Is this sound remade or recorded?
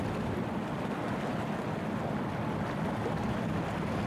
recorded